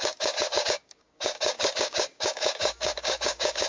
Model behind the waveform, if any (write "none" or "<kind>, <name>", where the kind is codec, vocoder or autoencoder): codec, DAC